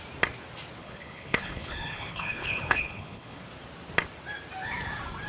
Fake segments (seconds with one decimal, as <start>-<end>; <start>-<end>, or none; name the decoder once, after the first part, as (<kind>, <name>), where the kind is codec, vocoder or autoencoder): 0.8-3.4 (codec, HILCodec)